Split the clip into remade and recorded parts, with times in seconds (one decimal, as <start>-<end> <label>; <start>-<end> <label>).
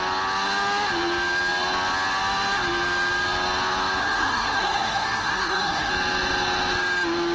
0.0-4.0 recorded; 4.0-5.9 remade; 5.9-7.3 recorded